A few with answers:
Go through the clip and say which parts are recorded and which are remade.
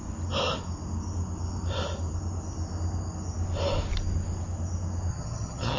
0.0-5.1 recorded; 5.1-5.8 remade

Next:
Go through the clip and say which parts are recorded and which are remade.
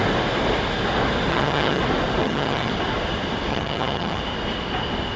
0.0-1.3 recorded; 1.3-1.8 remade; 1.8-2.2 recorded; 2.2-2.7 remade; 2.7-3.5 recorded; 3.5-4.2 remade; 4.2-5.2 recorded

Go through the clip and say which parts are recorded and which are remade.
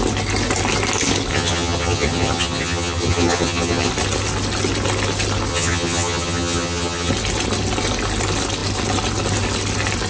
0.0-1.3 recorded; 1.3-3.9 remade; 3.9-5.5 recorded; 5.5-7.1 remade; 7.1-10.1 recorded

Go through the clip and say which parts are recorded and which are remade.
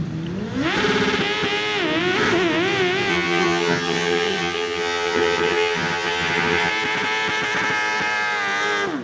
0.0-3.1 recorded; 3.1-6.7 remade; 6.7-9.0 recorded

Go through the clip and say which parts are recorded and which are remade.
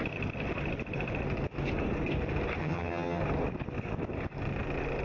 0.0-2.6 recorded; 2.6-3.2 remade; 3.2-5.0 recorded